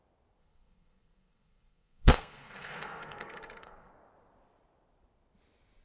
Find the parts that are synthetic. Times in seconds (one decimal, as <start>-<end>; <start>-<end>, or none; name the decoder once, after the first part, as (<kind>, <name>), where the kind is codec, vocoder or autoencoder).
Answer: 0.4-3.9 (codec, SNAC)